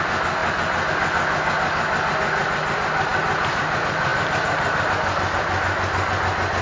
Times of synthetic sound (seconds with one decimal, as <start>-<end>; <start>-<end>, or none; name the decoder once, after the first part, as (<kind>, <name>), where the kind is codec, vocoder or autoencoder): none